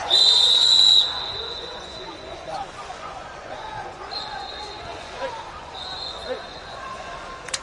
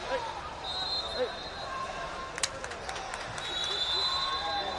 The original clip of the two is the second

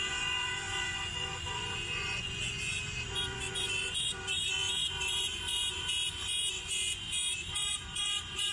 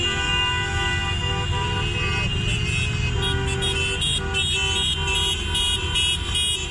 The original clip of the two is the second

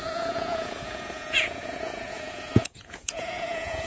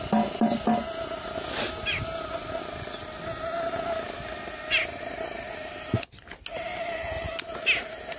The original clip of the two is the second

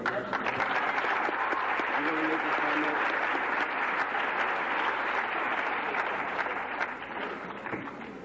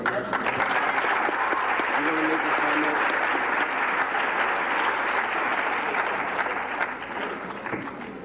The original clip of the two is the second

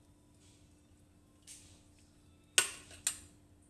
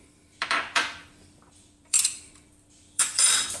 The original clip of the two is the first